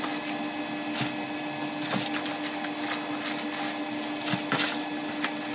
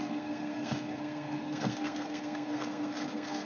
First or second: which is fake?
second